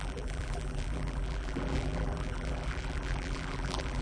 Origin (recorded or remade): remade